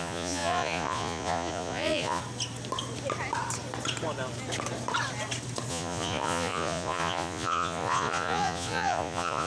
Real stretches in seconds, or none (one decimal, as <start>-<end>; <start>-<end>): 2.2-5.7